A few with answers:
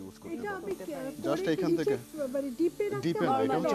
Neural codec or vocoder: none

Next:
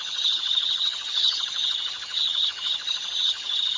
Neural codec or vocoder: vocoder, HiFi-GAN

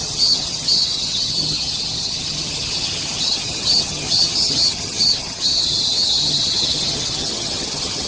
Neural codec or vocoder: vocoder, HiFi-GAN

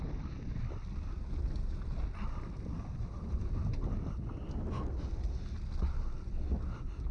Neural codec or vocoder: none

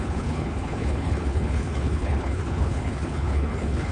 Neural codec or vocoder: codec, HILCodec